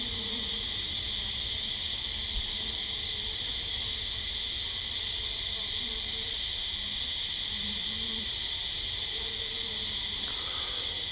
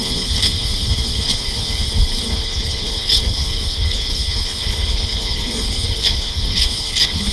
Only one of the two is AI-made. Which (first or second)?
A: second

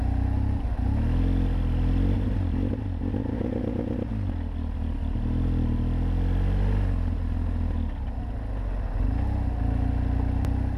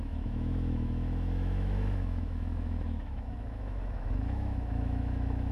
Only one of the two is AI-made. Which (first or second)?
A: second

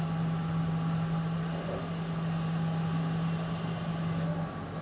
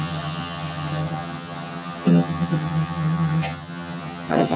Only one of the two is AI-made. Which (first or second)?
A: second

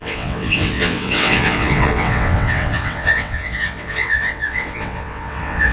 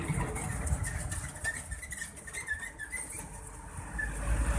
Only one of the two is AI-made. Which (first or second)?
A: first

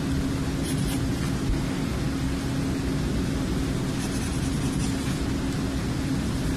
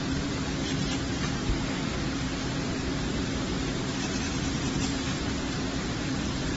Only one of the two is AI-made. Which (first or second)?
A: second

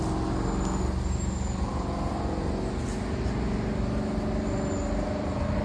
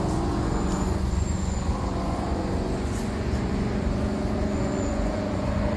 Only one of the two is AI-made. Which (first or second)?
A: second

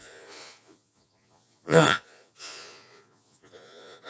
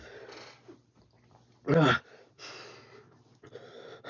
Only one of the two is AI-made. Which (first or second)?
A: first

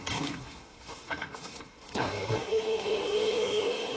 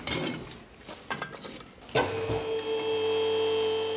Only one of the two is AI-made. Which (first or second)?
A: first